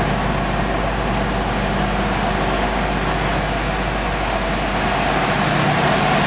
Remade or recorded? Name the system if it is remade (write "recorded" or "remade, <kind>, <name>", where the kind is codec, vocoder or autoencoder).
recorded